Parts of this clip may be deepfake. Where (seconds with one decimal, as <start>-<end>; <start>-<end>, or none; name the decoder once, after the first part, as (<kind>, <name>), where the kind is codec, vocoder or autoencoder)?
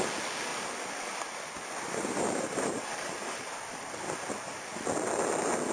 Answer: 0.5-3.9 (vocoder, BigVGAN v2)